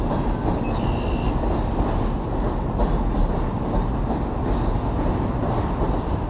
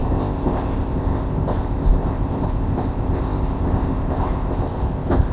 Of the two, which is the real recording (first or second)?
first